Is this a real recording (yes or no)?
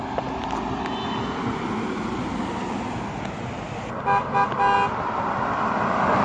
yes